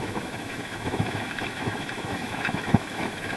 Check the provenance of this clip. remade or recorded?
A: remade